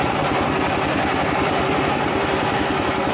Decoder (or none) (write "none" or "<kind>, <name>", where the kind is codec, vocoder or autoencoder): vocoder, BigVGAN v2